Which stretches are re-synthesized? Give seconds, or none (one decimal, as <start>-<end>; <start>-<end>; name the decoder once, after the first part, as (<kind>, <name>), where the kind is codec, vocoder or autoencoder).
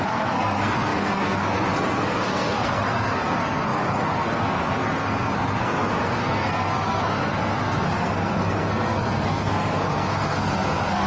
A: 0.0-11.1 (codec, SNAC)